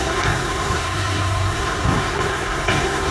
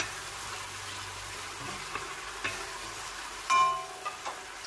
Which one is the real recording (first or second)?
second